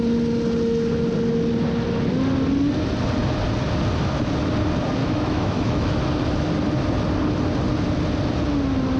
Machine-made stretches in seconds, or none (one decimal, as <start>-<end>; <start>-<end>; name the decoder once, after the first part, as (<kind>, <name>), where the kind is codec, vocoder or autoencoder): 5.0-6.0 (autoencoder, DAC-VAE)